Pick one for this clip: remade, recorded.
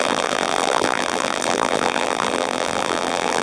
remade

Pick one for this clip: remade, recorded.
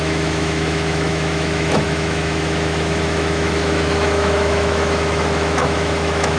remade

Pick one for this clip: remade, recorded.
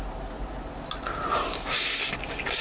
recorded